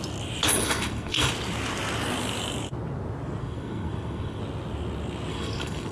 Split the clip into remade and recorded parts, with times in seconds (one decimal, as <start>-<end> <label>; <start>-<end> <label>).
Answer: 0.0-0.5 recorded; 0.5-1.3 remade; 1.3-3.4 recorded; 3.4-4.4 remade; 4.4-5.3 recorded; 5.3-5.9 remade